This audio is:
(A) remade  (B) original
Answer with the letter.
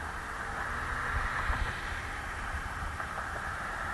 B